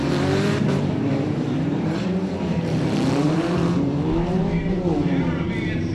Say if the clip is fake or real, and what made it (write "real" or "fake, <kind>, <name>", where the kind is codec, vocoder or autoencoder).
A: fake, vocoder, BigVGAN v2